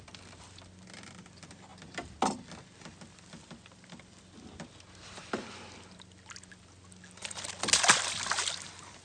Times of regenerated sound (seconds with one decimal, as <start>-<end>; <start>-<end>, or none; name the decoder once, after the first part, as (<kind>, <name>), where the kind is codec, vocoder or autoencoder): none